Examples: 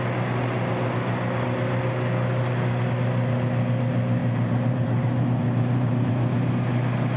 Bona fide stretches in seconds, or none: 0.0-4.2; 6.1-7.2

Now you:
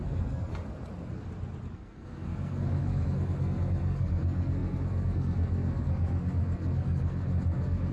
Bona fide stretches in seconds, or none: 0.5-1.7